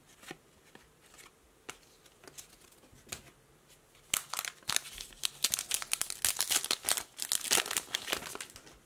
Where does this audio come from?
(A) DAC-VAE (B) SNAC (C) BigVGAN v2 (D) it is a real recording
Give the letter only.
D